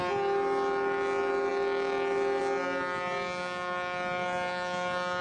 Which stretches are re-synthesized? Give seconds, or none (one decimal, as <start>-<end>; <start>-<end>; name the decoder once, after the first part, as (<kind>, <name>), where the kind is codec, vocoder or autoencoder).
none